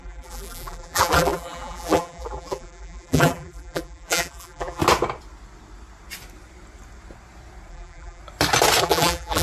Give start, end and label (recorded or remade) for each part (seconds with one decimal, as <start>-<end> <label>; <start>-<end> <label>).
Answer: 0.0-4.8 remade; 4.8-7.7 recorded; 7.7-8.2 remade; 8.2-8.8 recorded; 8.8-9.4 remade